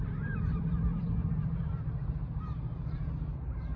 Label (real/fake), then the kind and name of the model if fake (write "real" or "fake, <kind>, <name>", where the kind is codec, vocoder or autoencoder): fake, vocoder, BigVGAN v2